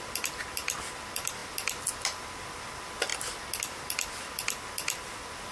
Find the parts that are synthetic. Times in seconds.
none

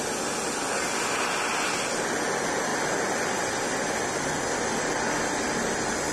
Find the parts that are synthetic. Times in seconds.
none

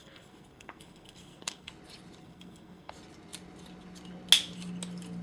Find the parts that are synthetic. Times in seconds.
0.0-1.7 (codec, SNAC); 2.2-2.9